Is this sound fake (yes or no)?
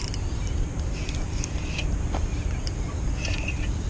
no